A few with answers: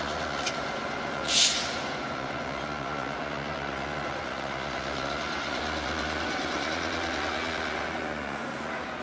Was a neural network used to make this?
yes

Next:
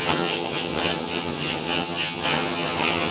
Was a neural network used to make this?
yes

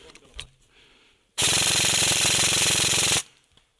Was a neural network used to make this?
yes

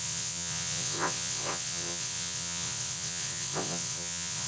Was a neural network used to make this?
yes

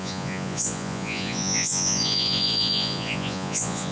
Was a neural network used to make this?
yes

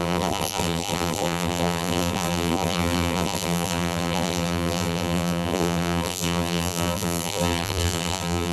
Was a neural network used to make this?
yes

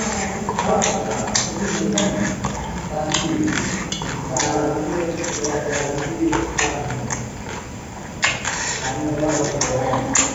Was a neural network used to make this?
no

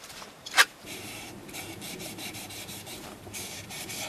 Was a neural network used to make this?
yes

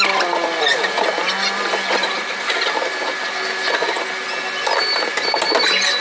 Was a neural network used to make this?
no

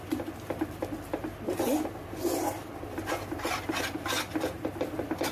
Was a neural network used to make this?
no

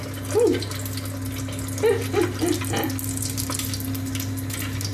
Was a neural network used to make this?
no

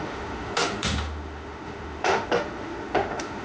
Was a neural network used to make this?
yes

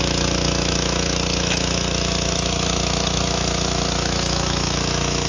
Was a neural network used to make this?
yes